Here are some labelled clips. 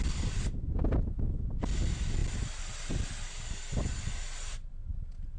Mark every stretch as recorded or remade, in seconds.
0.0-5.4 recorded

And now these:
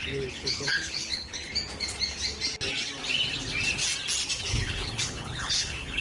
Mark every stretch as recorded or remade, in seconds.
0.0-1.5 remade; 1.5-4.4 recorded; 4.4-6.0 remade